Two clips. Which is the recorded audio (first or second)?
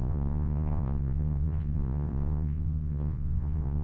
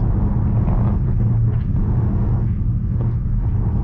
second